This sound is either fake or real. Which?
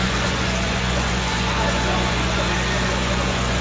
fake